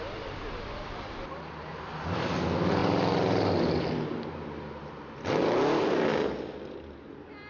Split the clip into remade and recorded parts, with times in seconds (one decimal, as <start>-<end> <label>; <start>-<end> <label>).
0.0-7.5 recorded